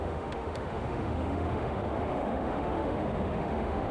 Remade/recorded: remade